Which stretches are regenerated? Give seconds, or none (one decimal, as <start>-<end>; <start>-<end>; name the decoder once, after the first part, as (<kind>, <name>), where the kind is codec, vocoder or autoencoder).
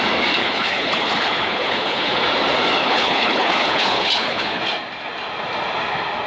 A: 0.4-2.2 (codec, HILCodec); 2.8-4.6